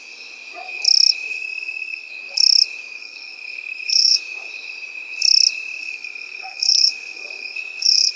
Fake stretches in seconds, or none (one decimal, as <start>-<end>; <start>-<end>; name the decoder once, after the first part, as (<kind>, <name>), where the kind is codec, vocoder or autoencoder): 1.3-2.1 (codec, SNAC); 3.0-4.2; 5.8-8.2